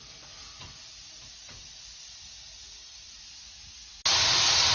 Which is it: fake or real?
real